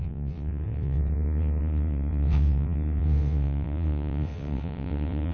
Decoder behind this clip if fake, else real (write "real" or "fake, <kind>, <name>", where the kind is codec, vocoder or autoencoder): fake, vocoder, WaveNeXt